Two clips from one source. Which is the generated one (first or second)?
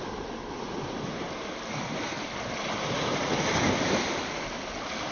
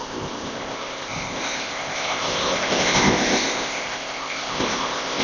second